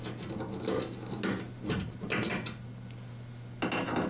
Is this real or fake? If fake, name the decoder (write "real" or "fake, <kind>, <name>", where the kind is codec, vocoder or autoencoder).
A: real